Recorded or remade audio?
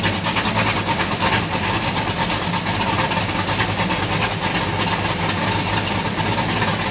recorded